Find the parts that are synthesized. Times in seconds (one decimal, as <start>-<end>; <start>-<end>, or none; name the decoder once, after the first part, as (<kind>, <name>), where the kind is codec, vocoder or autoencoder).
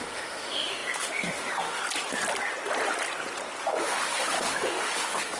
0.0-1.8 (autoencoder, DAC-VAE); 3.8-5.4